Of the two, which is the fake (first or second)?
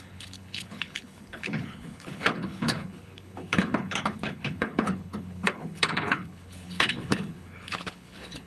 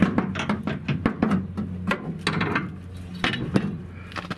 first